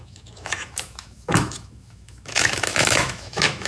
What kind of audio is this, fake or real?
fake